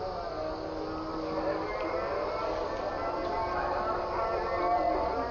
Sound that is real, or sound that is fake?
real